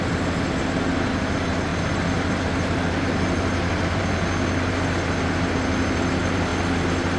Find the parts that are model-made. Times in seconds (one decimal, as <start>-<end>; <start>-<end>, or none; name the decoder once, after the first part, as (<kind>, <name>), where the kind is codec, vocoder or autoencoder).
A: none